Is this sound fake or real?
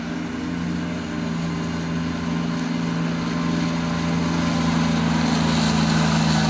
real